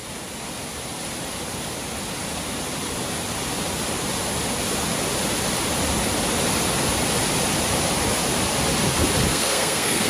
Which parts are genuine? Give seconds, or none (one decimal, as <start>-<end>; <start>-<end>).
0.0-9.3